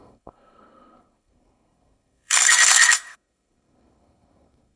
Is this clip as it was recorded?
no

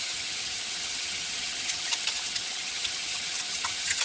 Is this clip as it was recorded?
no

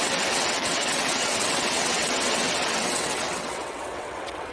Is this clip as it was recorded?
no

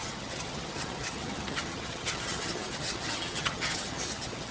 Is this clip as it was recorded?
no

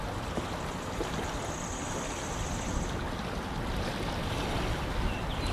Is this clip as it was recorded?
yes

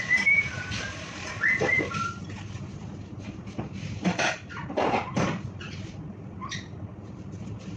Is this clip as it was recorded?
no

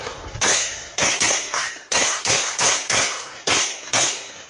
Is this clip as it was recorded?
no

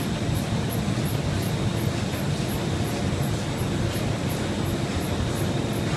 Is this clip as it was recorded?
yes